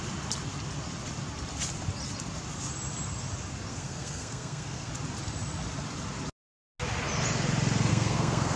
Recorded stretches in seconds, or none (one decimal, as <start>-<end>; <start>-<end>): 0.0-3.7; 4.9-7.9